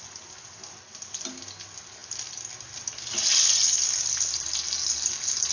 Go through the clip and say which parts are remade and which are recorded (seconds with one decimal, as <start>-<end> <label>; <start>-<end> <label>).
0.0-5.5 recorded